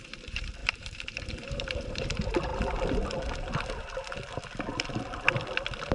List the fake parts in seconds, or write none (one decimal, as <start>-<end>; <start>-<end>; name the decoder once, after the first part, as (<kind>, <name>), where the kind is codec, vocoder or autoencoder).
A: 0.0-2.5 (vocoder, BigVGAN v2)